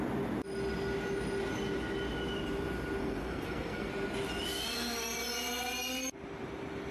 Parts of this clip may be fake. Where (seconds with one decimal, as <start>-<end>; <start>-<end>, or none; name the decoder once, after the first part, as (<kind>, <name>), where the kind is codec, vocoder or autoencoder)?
3.0-3.9 (codec, SNAC)